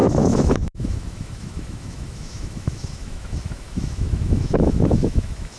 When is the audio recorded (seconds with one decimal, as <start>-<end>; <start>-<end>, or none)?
none